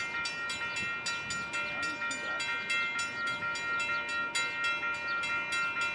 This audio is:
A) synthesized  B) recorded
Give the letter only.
B